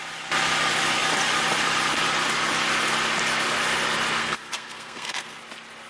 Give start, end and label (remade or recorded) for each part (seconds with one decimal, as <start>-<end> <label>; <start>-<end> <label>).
0.0-4.2 recorded; 4.2-5.4 remade; 5.4-5.9 recorded